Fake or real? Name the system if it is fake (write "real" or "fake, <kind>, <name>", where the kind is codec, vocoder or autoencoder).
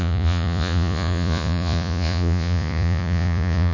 fake, vocoder, Vocos